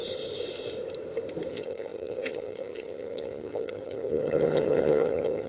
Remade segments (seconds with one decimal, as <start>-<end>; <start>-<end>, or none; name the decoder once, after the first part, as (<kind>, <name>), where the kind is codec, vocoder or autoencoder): 1.5-5.5 (vocoder, HiFi-GAN)